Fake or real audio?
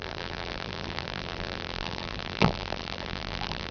fake